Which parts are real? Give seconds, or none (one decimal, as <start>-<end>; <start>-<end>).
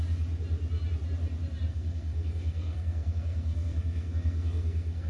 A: 0.0-1.7